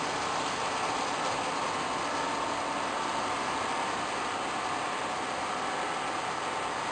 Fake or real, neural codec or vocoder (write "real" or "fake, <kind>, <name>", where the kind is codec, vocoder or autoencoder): real